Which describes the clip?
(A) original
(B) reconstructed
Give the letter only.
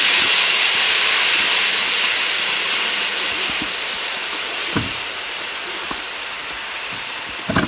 B